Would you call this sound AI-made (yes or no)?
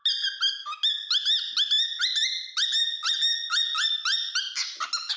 no